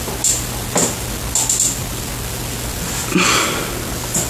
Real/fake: real